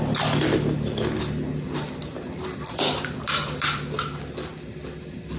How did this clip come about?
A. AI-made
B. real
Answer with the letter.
B